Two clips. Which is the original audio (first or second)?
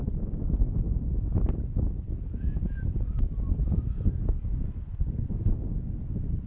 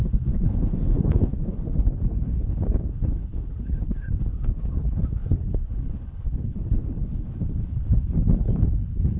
first